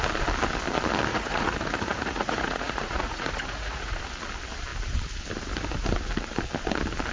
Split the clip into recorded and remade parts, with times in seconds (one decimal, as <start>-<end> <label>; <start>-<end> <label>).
0.0-1.1 recorded; 1.1-4.0 remade; 4.0-7.1 recorded